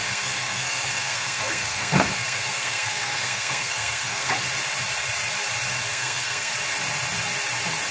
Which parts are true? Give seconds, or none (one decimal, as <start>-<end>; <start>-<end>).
4.3-5.9; 6.5-7.9